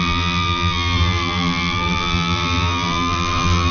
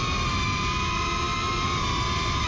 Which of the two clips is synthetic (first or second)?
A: first